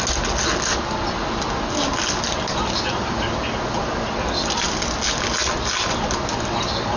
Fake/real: real